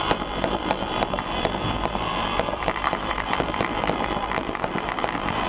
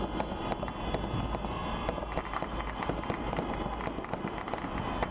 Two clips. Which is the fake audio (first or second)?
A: first